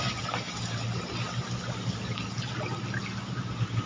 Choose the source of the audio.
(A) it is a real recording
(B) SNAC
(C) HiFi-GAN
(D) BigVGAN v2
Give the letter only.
A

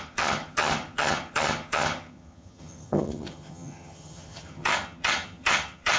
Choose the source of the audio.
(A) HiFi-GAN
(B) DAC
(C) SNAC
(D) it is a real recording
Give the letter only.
A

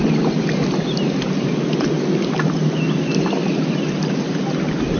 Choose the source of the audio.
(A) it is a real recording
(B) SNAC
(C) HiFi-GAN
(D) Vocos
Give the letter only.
A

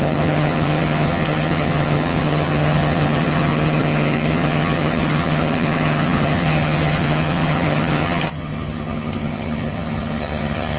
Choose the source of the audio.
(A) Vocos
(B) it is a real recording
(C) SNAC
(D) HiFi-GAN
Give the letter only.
D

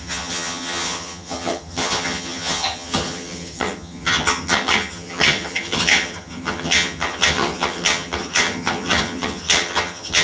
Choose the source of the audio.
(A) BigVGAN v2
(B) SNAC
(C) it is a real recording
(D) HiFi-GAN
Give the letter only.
D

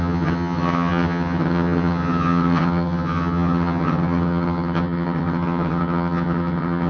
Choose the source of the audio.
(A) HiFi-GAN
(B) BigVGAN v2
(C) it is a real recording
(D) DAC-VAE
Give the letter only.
A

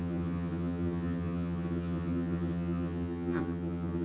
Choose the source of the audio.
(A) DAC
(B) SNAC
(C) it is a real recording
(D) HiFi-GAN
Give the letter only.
D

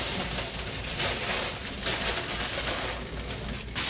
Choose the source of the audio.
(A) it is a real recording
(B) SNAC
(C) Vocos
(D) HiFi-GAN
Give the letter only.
A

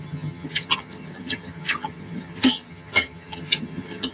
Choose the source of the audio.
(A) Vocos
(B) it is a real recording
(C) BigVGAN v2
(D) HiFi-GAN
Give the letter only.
D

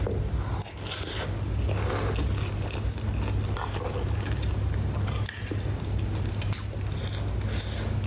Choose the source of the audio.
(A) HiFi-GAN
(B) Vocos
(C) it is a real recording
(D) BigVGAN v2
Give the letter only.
C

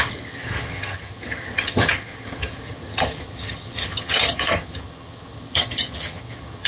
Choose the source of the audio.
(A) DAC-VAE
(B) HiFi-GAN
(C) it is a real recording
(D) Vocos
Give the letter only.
B